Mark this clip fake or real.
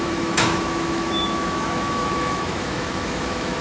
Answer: fake